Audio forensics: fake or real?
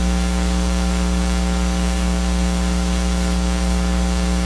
fake